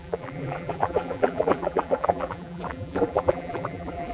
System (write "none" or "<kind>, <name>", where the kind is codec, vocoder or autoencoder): vocoder, BigVGAN v2